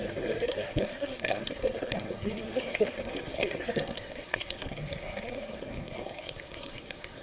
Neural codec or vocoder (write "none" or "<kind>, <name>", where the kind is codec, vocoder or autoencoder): codec, SNAC